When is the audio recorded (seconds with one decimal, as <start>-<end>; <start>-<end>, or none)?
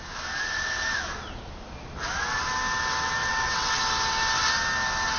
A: 0.0-3.2; 3.8-5.2